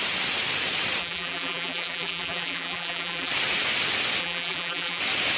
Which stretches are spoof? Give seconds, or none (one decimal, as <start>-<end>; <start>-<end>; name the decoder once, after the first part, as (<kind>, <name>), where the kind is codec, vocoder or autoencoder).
1.0-3.3 (vocoder, BigVGAN v2); 4.2-5.0